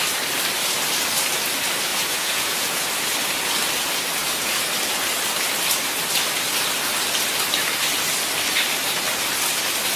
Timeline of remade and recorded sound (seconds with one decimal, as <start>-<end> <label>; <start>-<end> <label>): 0.0-1.9 recorded; 1.9-2.9 remade; 2.9-10.0 recorded